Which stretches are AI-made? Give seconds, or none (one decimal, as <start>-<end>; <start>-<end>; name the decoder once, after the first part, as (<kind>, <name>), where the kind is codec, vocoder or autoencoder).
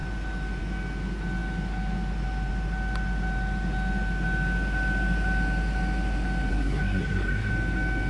6.5-7.5 (codec, SNAC)